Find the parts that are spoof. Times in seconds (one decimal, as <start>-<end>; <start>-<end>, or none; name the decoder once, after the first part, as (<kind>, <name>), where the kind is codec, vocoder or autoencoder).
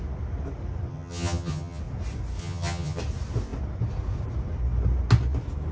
0.9-1.8 (vocoder, HiFi-GAN); 2.4-3.0